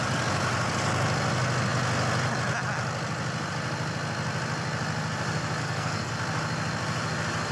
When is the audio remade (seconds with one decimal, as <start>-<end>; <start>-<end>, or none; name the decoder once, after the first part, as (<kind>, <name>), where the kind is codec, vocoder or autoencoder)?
5.6-6.1 (codec, SNAC)